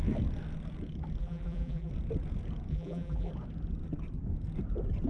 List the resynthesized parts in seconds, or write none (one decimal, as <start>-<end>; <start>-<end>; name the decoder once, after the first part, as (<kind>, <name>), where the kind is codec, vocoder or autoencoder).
1.2-1.9 (vocoder, BigVGAN v2); 2.7-3.3